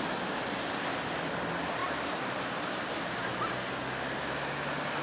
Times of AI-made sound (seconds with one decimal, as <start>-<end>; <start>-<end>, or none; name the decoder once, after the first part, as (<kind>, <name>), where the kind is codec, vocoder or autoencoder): none